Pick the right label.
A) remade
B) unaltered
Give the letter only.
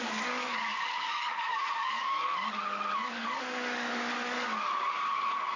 A